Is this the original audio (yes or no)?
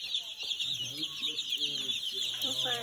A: no